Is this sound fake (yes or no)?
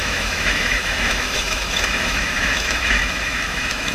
yes